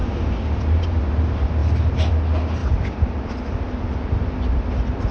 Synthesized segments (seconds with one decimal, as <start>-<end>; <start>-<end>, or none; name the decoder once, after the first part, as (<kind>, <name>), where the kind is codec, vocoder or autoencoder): 0.0-0.6 (vocoder, BigVGAN v2); 1.6-2.1; 2.6-5.1

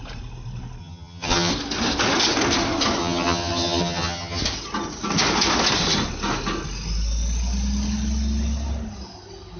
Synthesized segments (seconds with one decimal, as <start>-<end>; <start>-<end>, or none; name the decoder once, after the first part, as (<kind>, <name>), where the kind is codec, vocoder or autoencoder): 0.8-1.5 (vocoder, HiFi-GAN); 3.0-4.4

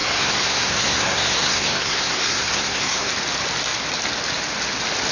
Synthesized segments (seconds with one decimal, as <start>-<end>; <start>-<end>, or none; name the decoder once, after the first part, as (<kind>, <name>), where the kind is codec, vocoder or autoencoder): 0.0-3.1 (codec, SNAC)